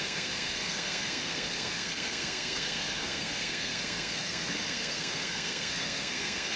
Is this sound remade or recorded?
remade